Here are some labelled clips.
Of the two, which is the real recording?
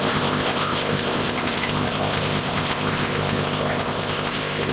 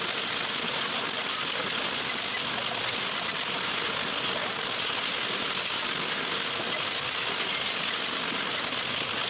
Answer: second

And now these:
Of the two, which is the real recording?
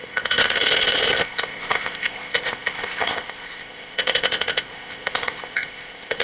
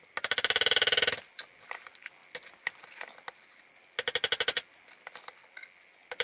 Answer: second